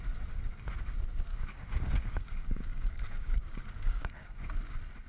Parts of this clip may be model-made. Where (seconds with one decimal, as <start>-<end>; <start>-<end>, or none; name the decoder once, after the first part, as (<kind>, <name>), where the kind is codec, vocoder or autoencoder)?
1.3-4.4 (codec, DAC)

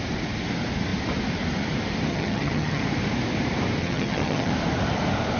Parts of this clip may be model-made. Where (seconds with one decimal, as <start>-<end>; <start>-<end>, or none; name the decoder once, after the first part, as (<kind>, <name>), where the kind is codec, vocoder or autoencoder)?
2.1-2.8 (vocoder, HiFi-GAN); 3.8-4.5